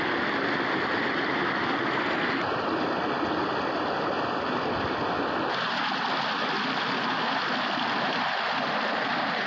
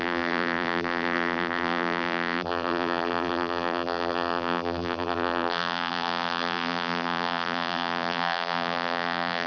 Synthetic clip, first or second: second